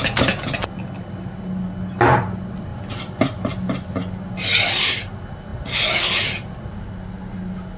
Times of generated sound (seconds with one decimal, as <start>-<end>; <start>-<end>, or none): none